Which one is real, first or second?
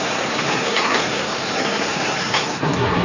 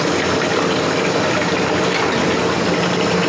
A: second